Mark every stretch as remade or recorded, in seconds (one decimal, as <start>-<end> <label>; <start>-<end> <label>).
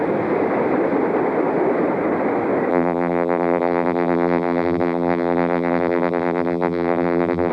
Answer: 0.0-2.7 recorded; 2.7-7.5 remade